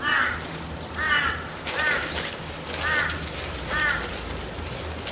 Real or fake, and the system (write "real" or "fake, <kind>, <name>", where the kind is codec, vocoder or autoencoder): real